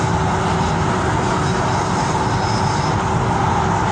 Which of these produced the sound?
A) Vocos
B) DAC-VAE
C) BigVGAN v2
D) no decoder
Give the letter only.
D